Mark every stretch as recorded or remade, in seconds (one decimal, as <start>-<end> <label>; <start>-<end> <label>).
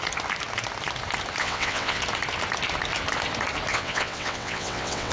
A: 0.0-1.4 recorded; 1.4-2.0 remade; 2.0-3.7 recorded; 3.7-5.1 remade